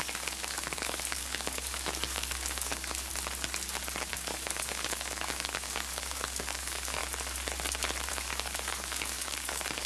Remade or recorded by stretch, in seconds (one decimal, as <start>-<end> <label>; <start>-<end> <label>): 0.0-3.1 remade; 3.1-4.1 recorded; 4.1-7.0 remade; 7.0-8.1 recorded; 8.1-9.9 remade

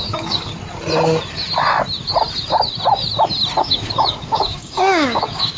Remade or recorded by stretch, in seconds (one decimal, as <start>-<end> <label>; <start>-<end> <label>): 0.0-0.5 remade; 0.5-3.6 recorded; 3.6-5.6 remade

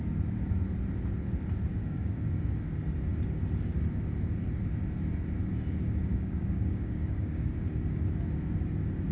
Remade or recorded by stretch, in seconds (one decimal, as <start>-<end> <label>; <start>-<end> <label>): 0.0-1.8 recorded; 1.8-2.5 remade; 2.5-6.1 recorded; 6.1-7.5 remade; 7.5-9.1 recorded